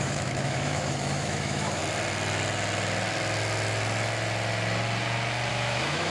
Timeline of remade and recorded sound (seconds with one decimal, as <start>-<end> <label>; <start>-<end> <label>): 0.0-1.8 remade; 1.8-5.5 recorded; 5.5-6.1 remade

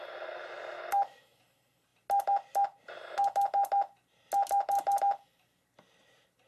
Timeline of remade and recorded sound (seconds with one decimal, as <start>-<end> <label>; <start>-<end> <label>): 0.0-0.9 recorded; 0.9-1.4 remade; 1.4-6.5 recorded

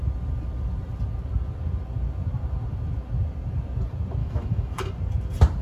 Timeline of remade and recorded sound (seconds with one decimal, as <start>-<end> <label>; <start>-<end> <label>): 0.0-4.2 recorded; 4.2-4.8 remade; 4.8-5.6 recorded

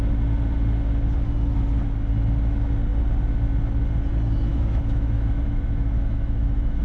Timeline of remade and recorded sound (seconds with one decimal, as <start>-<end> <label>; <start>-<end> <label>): 0.0-4.5 recorded; 4.5-6.8 remade

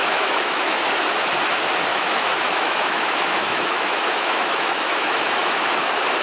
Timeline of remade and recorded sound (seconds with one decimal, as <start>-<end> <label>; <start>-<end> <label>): 0.0-0.9 remade; 0.9-1.9 recorded; 1.9-5.6 remade; 5.6-6.2 recorded

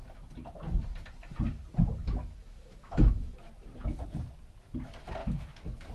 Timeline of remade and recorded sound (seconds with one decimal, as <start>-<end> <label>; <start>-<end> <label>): 0.0-2.0 recorded; 2.0-3.5 remade; 3.5-5.2 recorded; 5.2-5.9 remade